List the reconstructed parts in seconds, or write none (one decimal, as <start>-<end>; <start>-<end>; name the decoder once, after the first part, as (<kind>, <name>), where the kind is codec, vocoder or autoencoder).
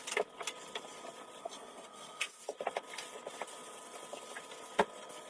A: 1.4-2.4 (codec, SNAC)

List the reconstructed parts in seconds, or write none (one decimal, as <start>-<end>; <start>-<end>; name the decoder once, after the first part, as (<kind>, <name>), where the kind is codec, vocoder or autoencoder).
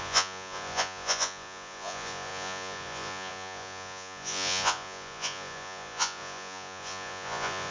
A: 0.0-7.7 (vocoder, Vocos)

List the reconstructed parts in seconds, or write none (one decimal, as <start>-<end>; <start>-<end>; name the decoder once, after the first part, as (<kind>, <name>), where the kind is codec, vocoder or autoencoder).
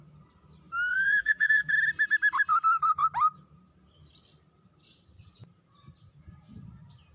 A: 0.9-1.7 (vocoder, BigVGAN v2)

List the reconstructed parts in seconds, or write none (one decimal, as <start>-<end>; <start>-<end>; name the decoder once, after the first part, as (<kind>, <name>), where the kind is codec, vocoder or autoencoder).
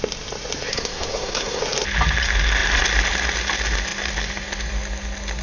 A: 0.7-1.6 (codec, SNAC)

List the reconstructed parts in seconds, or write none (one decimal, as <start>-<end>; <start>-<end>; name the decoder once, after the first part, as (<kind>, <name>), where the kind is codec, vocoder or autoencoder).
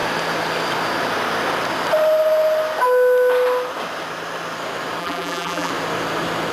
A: 5.0-5.7 (vocoder, BigVGAN v2)